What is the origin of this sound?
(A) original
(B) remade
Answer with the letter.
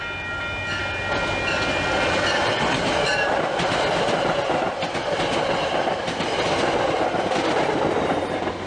A